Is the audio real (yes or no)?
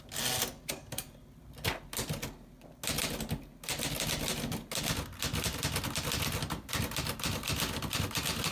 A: yes